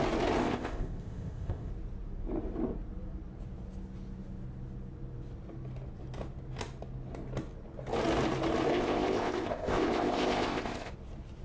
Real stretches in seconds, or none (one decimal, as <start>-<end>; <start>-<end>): 0.0-0.4; 1.7-8.7; 10.9-11.4